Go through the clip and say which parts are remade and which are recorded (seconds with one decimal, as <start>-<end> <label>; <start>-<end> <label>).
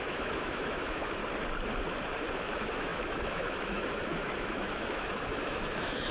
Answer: 0.0-1.2 remade; 1.2-2.3 recorded; 2.3-6.1 remade